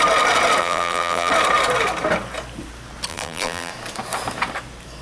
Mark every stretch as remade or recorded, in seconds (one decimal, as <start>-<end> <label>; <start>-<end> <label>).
0.0-0.6 recorded; 0.6-1.3 remade; 1.3-3.1 recorded; 3.1-3.7 remade; 3.7-5.0 recorded